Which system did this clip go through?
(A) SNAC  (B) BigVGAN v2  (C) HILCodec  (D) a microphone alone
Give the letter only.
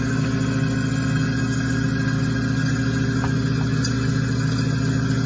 D